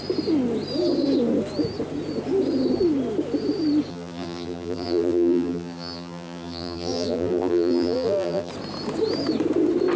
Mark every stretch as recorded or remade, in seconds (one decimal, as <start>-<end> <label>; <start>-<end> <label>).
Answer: 0.0-3.9 recorded; 3.9-8.5 remade; 8.5-10.0 recorded